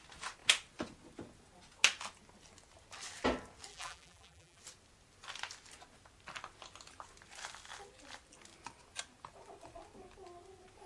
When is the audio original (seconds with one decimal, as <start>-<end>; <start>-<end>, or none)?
0.0-3.7; 4.6-10.9

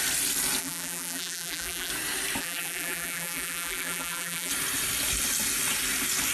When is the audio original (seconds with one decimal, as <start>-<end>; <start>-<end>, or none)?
0.0-0.6; 1.9-2.4; 4.5-6.3

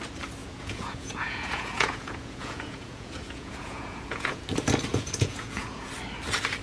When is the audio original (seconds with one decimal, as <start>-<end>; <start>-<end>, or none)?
0.0-0.4; 4.4-4.9; 5.9-6.6